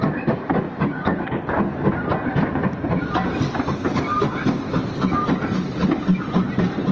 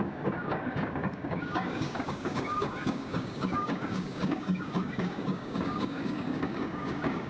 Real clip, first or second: first